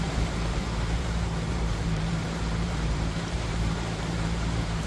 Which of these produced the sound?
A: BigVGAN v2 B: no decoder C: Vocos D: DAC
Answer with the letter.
A